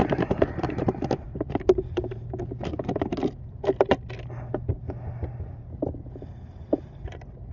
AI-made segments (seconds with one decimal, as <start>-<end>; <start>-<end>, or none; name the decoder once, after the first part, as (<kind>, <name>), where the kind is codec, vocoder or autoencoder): 0.0-2.4 (vocoder, BigVGAN v2)